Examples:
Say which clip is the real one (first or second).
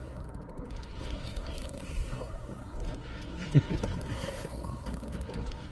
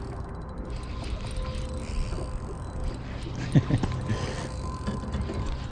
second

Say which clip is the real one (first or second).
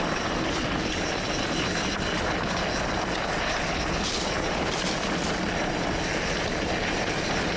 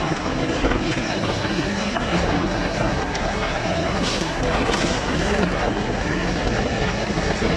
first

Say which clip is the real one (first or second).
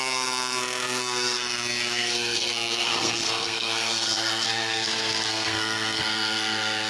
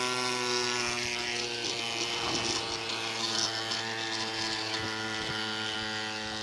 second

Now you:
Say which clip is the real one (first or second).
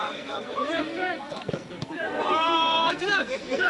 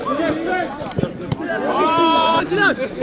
second